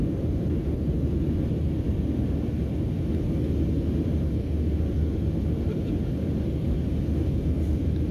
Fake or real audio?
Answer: fake